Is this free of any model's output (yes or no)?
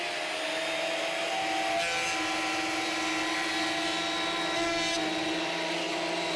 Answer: yes